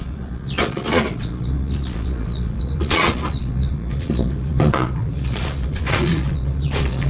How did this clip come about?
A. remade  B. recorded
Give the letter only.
A